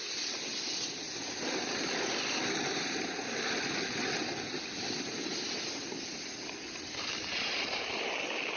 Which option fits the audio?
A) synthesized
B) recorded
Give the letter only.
B